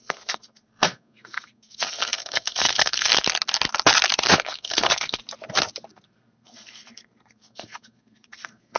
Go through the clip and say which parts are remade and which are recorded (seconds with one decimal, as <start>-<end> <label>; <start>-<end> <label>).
0.0-3.1 remade; 3.1-4.3 recorded; 4.3-5.2 remade; 5.2-5.9 recorded; 5.9-8.8 remade